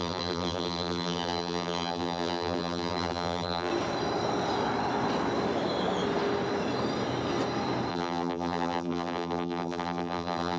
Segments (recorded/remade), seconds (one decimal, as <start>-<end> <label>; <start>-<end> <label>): 0.0-3.7 remade; 3.7-7.9 recorded; 7.9-10.6 remade

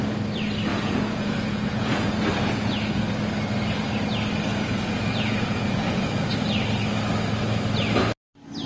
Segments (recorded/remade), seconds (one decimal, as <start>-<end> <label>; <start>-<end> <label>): 0.0-0.7 recorded; 0.7-3.0 remade; 3.0-4.5 recorded; 4.5-6.3 remade; 6.3-8.7 recorded

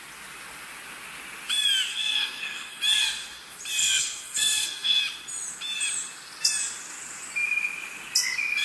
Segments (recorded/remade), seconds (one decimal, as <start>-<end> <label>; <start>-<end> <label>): 0.0-1.9 recorded; 1.9-2.8 remade; 2.8-3.8 recorded; 3.8-5.0 remade; 5.0-8.6 recorded

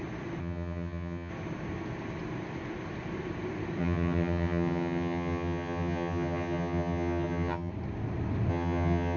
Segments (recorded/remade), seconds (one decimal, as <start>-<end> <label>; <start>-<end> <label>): 0.0-0.4 recorded; 0.4-1.3 remade; 1.3-3.8 recorded; 3.8-7.7 remade; 7.7-8.5 recorded; 8.5-9.2 remade

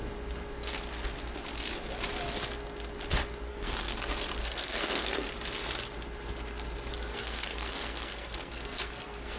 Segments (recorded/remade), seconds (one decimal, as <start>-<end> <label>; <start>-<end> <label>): 0.0-3.5 recorded; 3.5-4.0 remade; 4.0-4.4 recorded; 4.4-5.3 remade; 5.3-7.1 recorded; 7.1-9.4 remade

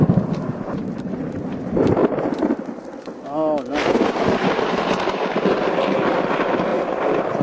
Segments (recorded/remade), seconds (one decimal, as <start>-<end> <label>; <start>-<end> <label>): 0.0-2.0 remade; 2.0-4.1 recorded; 4.1-6.7 remade; 6.7-7.4 recorded